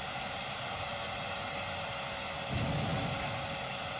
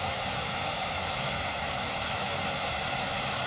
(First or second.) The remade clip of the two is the second